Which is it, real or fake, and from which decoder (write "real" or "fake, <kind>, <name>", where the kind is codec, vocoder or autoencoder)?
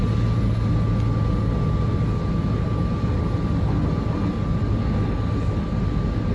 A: real